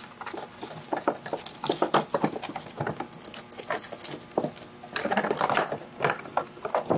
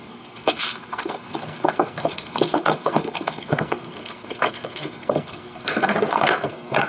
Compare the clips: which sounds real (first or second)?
first